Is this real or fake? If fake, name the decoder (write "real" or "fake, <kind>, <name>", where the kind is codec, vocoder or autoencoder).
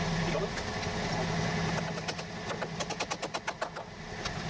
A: real